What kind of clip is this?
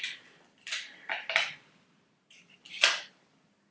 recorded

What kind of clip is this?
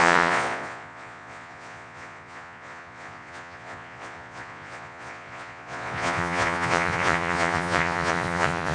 remade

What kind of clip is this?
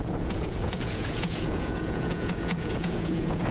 remade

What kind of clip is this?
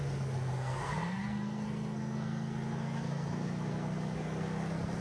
remade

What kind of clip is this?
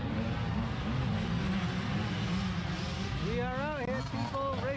recorded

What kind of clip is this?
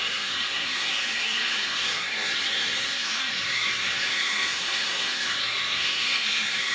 remade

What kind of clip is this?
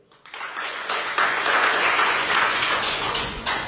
remade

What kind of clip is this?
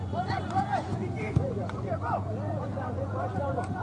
remade